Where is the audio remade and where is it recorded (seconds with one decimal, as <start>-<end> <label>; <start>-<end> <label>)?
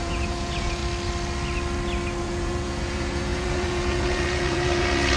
0.0-0.8 remade; 0.8-2.2 recorded; 2.2-5.2 remade